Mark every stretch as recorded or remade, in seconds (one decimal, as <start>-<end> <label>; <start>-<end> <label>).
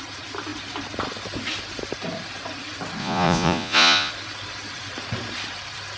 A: 0.0-3.0 recorded; 3.0-4.1 remade; 4.1-6.0 recorded